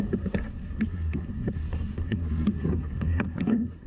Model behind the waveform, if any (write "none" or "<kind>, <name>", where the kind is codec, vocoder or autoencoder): codec, SNAC